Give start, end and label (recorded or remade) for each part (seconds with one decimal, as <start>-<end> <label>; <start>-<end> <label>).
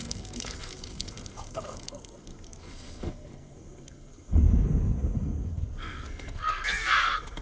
0.0-7.4 remade